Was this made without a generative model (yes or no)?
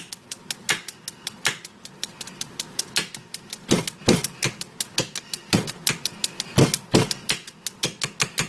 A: yes